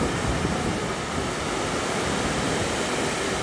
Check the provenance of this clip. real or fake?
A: real